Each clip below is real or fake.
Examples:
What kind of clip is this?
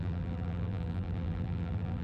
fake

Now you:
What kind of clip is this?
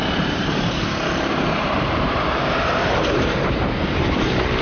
fake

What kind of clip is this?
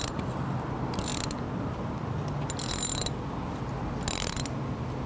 real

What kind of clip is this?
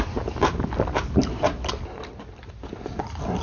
real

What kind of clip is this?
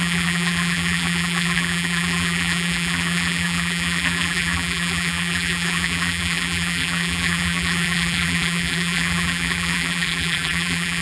fake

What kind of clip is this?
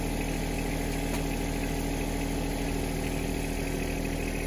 real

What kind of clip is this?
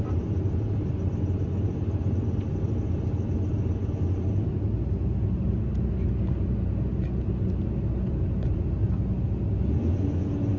real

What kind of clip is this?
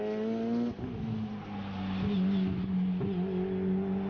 real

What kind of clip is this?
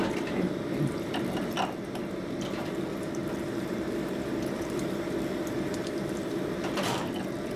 fake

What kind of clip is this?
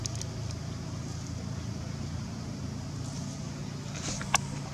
real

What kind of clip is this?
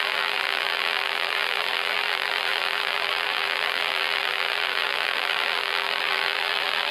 fake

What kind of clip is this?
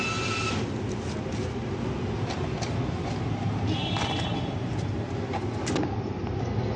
real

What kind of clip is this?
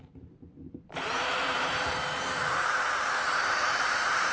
fake